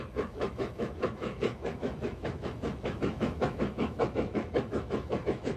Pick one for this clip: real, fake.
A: fake